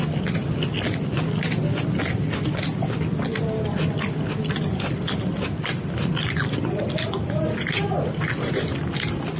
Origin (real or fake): real